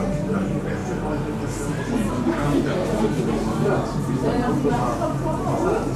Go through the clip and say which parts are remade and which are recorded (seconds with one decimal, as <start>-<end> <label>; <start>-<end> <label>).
0.0-0.8 remade; 0.8-2.1 recorded; 2.1-6.0 remade